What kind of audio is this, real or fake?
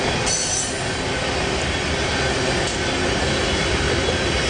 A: real